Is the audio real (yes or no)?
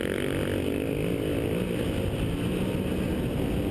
yes